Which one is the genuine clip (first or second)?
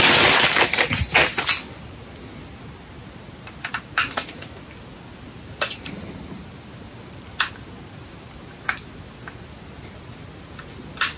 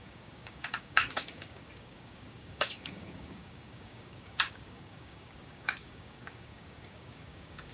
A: first